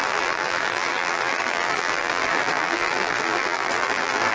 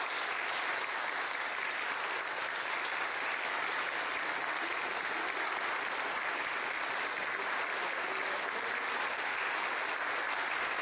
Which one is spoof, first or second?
first